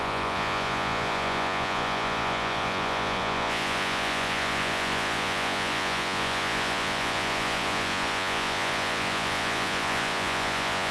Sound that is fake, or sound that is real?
fake